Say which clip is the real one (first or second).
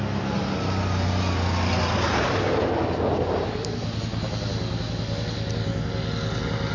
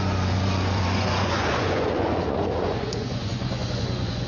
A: first